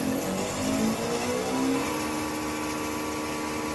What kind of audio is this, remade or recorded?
recorded